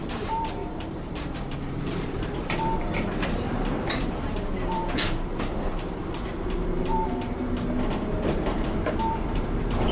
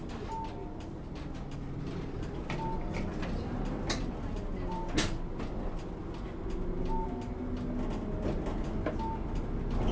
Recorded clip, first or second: second